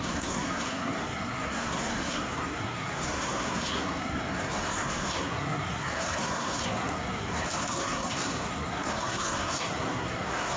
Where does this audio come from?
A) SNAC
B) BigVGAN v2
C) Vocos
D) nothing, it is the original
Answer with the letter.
A